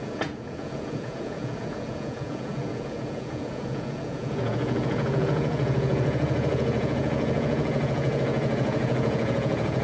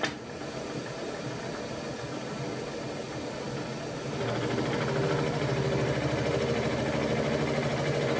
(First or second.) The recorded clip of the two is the second